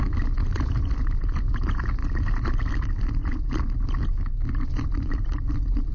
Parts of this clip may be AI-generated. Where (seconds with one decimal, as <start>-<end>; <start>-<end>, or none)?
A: none